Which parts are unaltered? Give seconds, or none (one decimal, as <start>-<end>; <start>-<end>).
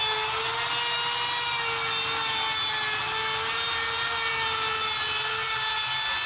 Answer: 0.0-6.3